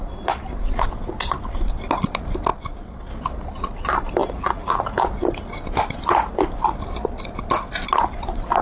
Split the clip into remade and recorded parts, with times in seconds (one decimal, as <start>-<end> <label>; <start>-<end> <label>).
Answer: 0.0-4.2 recorded; 4.2-5.1 remade; 5.1-8.6 recorded